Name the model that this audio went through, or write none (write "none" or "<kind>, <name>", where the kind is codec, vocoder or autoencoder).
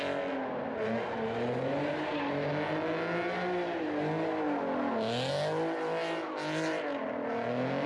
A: none